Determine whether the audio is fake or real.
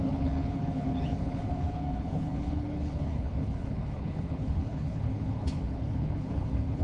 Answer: fake